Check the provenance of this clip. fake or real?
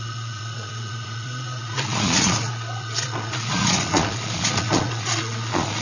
fake